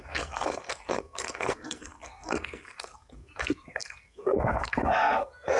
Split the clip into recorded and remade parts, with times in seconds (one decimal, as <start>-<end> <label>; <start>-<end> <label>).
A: 0.0-5.6 remade